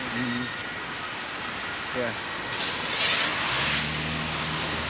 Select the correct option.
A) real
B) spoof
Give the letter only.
A